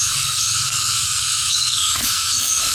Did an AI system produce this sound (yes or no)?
yes